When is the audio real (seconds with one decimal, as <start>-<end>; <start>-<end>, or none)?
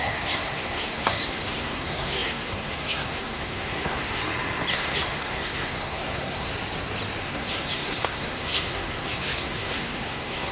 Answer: 4.2-4.7; 6.5-7.2